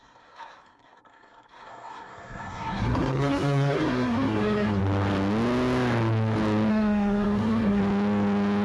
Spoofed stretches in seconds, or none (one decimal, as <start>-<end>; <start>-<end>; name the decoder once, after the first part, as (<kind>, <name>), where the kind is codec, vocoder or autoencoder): 0.0-4.8 (codec, SNAC); 6.7-7.8